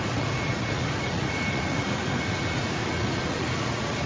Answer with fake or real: fake